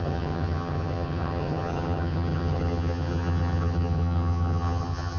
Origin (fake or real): fake